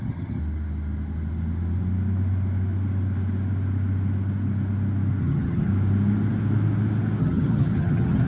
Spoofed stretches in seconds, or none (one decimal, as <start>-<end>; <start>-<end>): 0.0-0.4; 5.2-5.7; 7.2-8.3